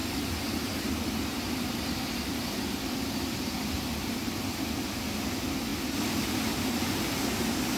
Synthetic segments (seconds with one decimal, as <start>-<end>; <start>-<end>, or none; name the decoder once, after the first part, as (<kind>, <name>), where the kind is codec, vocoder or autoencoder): 0.0-4.6 (vocoder, BigVGAN v2); 5.7-7.0